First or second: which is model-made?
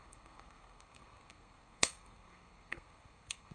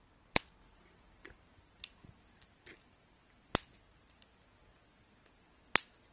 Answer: first